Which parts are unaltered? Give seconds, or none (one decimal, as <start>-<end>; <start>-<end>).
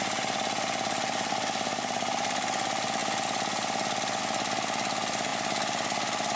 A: 0.0-6.4